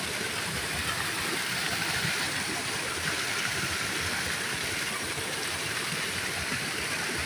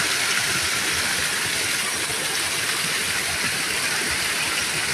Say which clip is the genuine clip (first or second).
second